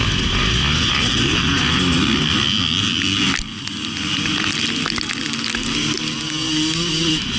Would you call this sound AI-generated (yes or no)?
no